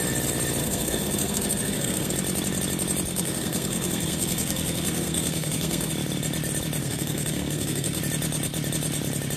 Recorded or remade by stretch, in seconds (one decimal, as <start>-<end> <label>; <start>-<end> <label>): 0.0-0.6 recorded; 0.6-2.1 remade; 2.1-3.1 recorded; 3.1-5.9 remade; 5.9-6.8 recorded; 6.8-8.0 remade; 8.0-9.4 recorded